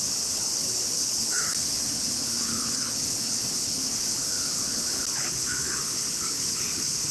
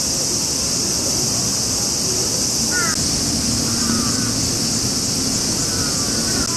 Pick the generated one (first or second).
first